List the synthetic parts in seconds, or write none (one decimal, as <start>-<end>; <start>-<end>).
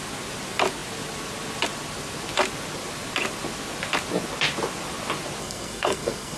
5.4-6.4